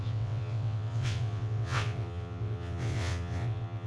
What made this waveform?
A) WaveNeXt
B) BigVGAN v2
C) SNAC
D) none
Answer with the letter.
A